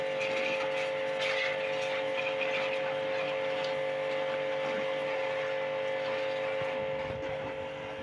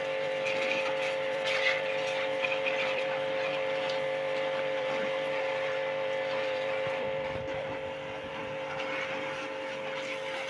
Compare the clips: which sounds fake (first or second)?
second